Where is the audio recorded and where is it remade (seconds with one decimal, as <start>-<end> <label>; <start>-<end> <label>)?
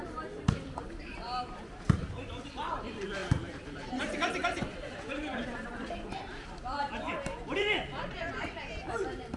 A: 0.0-9.4 remade